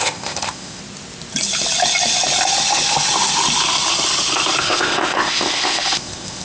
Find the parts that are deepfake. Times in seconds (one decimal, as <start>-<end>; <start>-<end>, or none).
0.0-0.8; 4.6-6.4